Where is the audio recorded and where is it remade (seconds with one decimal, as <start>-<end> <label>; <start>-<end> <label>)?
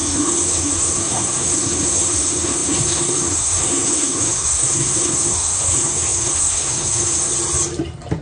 0.0-7.3 remade; 7.3-8.2 recorded